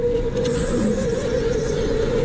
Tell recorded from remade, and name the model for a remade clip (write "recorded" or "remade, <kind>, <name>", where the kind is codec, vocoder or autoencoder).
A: remade, vocoder, Vocos